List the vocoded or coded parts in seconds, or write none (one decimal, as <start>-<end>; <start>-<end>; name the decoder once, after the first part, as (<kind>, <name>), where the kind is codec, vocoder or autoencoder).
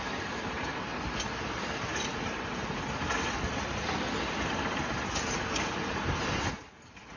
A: none